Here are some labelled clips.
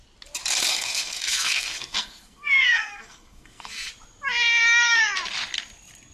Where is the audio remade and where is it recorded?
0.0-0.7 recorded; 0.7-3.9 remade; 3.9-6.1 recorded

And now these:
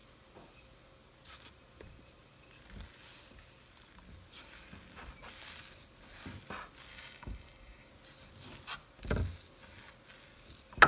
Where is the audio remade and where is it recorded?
0.0-6.9 recorded; 6.9-7.9 remade; 7.9-10.9 recorded

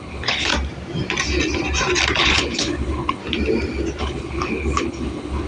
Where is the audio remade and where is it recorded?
0.0-0.5 remade; 0.5-2.2 recorded; 2.2-3.2 remade; 3.2-4.0 recorded; 4.0-5.5 remade